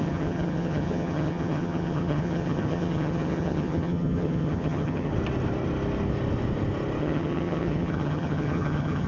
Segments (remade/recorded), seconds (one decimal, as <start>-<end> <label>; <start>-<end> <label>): 0.0-5.1 remade; 5.1-7.0 recorded; 7.0-9.1 remade